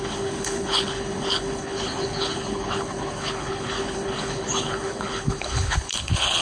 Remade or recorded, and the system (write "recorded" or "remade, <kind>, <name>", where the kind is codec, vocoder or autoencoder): remade, codec, HILCodec